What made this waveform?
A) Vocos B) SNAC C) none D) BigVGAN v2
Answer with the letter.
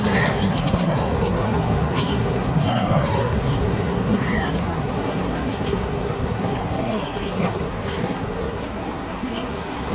B